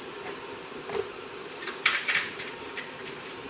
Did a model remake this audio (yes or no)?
yes